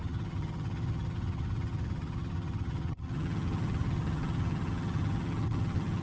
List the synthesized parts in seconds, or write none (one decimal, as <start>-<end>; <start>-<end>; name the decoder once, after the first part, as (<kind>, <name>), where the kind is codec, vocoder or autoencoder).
0.0-6.0 (vocoder, HiFi-GAN)